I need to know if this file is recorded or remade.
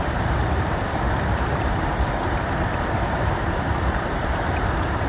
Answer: remade